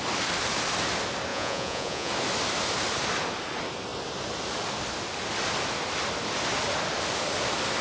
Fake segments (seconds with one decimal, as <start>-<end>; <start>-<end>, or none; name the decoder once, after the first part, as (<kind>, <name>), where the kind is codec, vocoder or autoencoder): 1.3-2.1 (vocoder, Vocos)